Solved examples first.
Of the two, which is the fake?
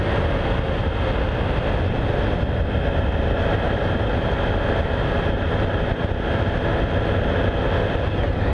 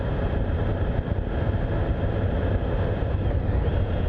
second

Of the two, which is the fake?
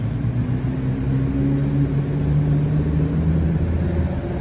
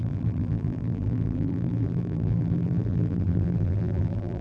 second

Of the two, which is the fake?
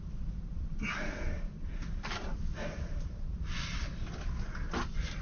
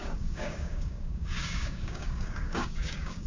second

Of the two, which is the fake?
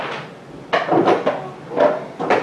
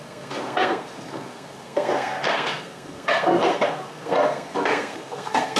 second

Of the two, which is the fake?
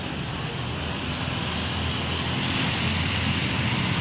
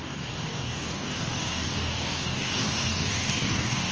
second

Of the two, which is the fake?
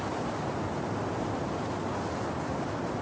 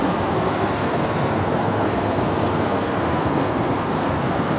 second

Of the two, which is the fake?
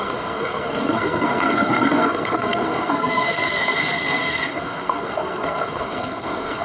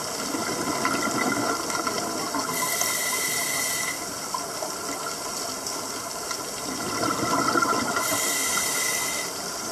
first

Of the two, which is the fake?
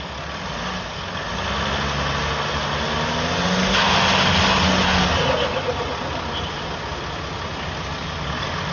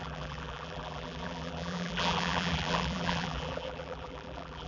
second